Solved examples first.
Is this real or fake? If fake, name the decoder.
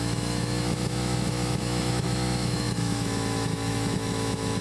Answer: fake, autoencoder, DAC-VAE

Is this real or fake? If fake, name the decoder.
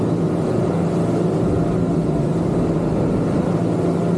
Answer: real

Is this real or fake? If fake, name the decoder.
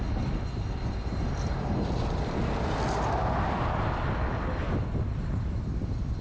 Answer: real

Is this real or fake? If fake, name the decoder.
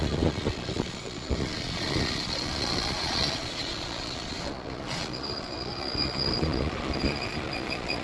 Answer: fake, vocoder, Vocos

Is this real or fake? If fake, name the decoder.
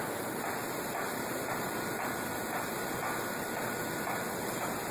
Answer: real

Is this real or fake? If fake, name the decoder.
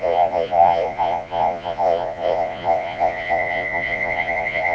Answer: fake, vocoder, Vocos